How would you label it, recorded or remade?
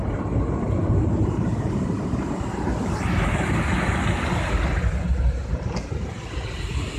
recorded